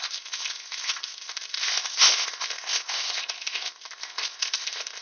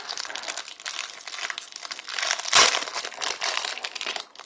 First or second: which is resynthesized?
first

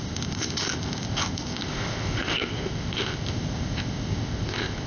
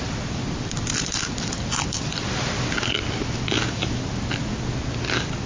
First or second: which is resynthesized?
first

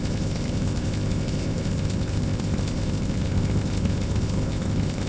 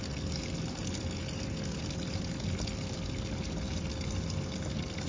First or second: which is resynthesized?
first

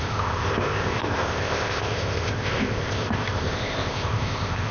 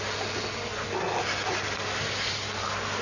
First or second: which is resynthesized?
first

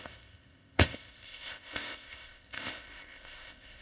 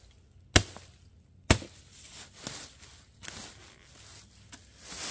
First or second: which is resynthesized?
first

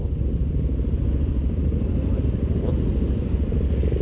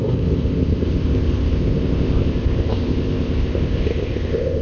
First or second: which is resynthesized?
second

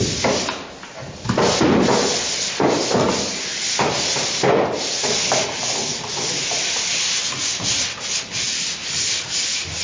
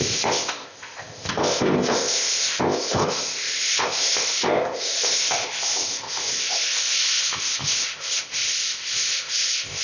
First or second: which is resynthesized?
second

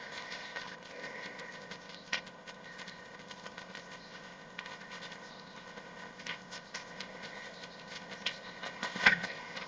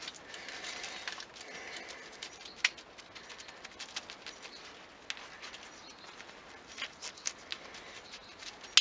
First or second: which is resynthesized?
first